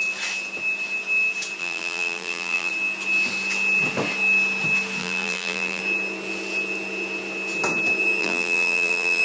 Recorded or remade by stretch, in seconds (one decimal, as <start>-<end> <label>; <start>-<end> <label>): 0.0-1.6 recorded; 1.6-2.7 remade; 2.7-5.0 recorded; 5.0-5.8 remade; 5.8-8.2 recorded; 8.2-9.2 remade